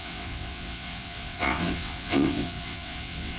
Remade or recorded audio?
remade